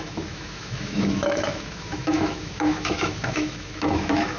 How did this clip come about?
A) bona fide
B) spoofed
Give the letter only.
B